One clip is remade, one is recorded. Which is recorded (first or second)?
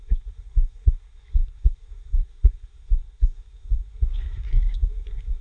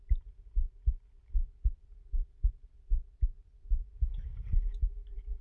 second